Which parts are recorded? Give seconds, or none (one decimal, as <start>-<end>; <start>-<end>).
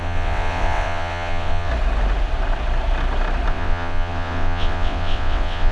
1.7-3.5